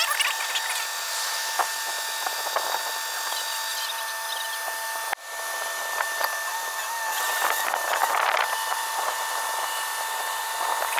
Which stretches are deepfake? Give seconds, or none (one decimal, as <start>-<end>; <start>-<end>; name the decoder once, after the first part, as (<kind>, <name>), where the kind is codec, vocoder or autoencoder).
3.7-4.6 (vocoder, BigVGAN v2); 8.0-9.5